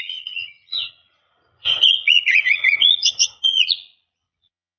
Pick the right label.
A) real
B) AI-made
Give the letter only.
B